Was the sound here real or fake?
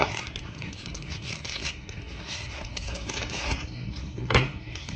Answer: fake